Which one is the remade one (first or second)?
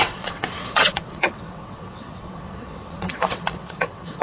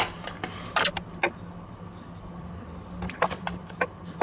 first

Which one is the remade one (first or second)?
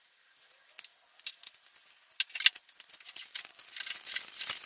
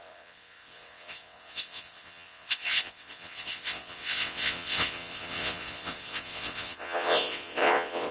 second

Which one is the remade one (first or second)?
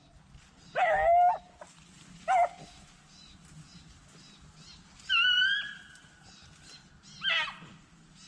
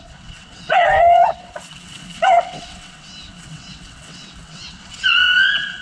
second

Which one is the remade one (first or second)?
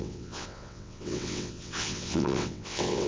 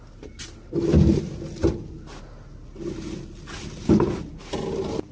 first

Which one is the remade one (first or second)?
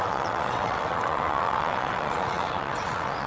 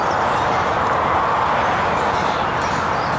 first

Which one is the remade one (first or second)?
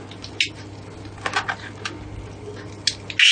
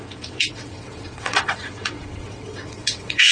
second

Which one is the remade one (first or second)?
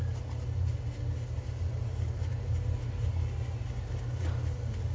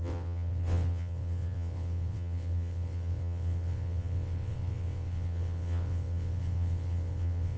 second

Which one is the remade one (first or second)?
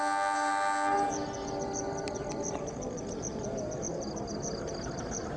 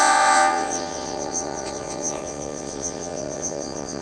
second